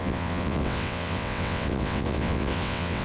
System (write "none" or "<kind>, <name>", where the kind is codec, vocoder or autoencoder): vocoder, WaveNeXt